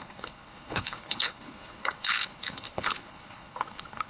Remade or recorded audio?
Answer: remade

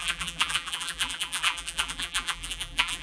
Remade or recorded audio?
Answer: remade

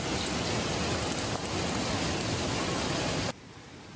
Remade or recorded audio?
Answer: recorded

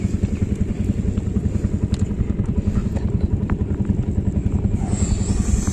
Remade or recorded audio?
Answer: recorded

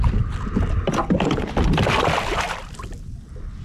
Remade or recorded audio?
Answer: recorded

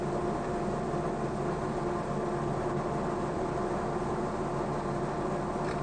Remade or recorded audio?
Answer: recorded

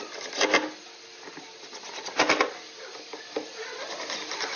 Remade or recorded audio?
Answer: recorded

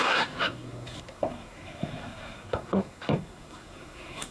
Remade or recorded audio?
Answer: remade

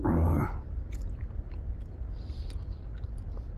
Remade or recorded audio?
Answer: recorded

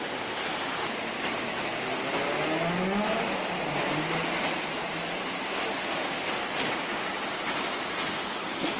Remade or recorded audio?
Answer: recorded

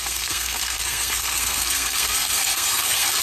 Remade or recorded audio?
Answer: remade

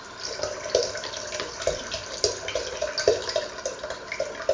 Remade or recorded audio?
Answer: recorded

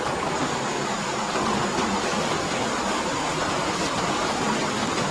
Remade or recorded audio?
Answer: recorded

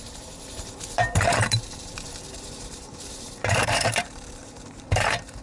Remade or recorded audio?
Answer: remade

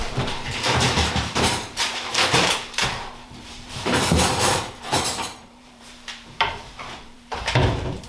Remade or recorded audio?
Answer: remade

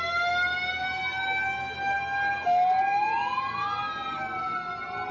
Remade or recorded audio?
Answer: recorded